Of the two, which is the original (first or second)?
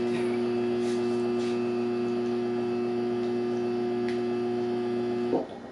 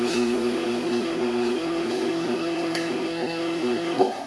first